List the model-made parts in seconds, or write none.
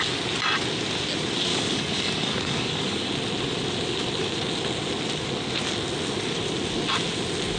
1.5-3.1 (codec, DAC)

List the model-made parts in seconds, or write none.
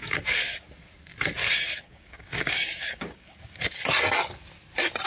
0.0-0.7 (codec, DAC); 1.4-3.6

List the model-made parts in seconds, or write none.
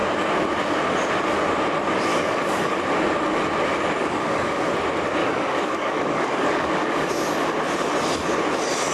2.1-2.8 (codec, DAC); 4.0-4.7; 5.2-7.1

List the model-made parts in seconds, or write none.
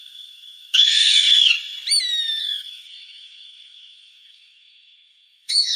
0.0-1.5 (codec, DAC); 2.4-5.8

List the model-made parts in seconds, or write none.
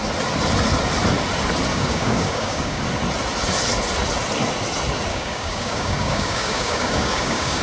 1.7-2.8 (codec, DAC); 5.1-7.6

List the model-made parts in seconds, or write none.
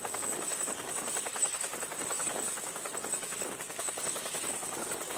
0.0-5.2 (codec, DAC)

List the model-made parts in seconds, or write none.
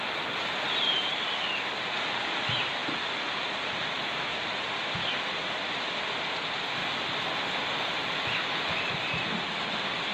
none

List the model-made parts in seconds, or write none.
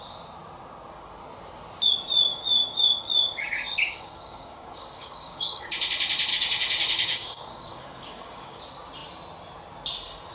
2.3-5.7 (codec, DAC); 6.3-8.6